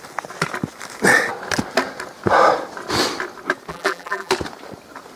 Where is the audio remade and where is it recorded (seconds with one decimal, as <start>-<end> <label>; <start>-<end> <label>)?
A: 0.0-3.7 recorded; 3.7-4.3 remade; 4.3-5.2 recorded